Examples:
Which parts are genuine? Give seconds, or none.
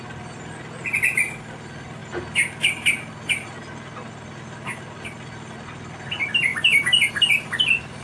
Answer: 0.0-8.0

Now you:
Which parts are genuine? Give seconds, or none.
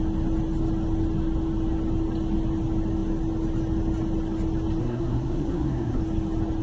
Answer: 0.0-4.8; 6.0-6.6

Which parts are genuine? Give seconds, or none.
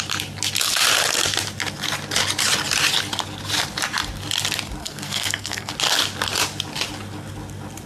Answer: 0.0-4.8; 5.7-7.9